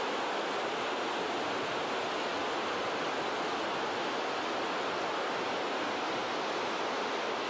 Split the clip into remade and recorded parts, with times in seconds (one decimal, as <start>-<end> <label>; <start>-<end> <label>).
0.0-2.3 recorded; 2.3-5.4 remade; 5.4-7.5 recorded

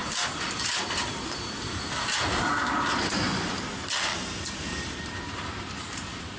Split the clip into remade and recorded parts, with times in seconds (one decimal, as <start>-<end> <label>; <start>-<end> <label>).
0.0-1.8 remade; 1.8-2.4 recorded; 2.4-6.4 remade

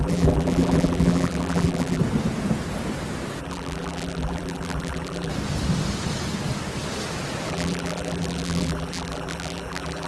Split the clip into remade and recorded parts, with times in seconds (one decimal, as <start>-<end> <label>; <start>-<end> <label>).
0.0-2.0 remade; 2.0-3.4 recorded; 3.4-5.3 remade; 5.3-7.5 recorded; 7.5-10.1 remade

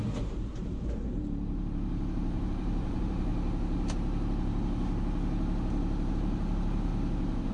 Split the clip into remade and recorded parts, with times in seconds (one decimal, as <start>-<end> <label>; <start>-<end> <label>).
0.0-3.3 remade; 3.3-6.1 recorded; 6.1-6.9 remade; 6.9-7.5 recorded

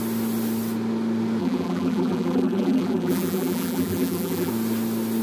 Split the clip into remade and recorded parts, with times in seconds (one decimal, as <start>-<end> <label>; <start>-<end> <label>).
0.0-1.4 recorded; 1.4-4.5 remade; 4.5-5.2 recorded

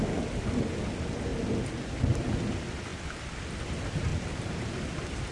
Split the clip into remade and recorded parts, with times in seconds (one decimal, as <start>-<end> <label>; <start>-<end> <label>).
0.0-2.9 recorded; 2.9-3.6 remade; 3.6-4.1 recorded; 4.1-5.3 remade

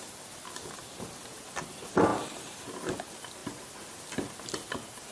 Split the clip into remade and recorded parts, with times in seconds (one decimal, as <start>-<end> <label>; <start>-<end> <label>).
0.0-0.8 recorded; 0.8-1.7 remade; 1.7-3.4 recorded; 3.4-4.3 remade; 4.3-5.1 recorded

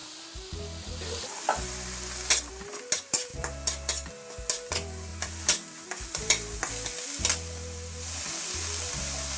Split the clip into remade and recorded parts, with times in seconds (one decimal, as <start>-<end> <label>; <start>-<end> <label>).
0.0-3.3 recorded; 3.3-4.1 remade; 4.1-5.1 recorded; 5.1-6.6 remade; 6.6-9.4 recorded